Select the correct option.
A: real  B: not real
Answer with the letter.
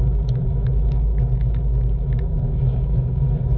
B